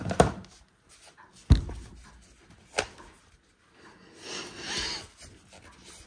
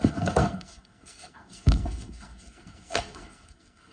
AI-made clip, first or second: second